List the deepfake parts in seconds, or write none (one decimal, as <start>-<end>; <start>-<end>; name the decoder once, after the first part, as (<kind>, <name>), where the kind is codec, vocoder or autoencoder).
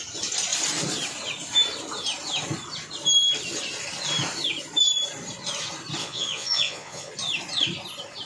6.0-7.1 (vocoder, Vocos)